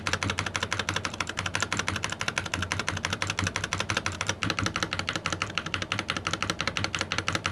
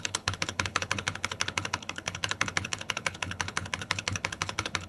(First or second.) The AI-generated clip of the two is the second